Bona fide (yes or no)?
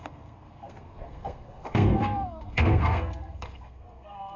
no